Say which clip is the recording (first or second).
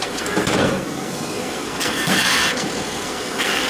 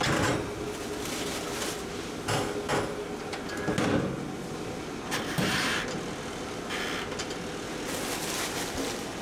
second